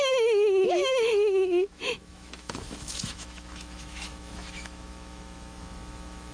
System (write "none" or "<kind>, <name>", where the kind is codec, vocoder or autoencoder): autoencoder, DAC-VAE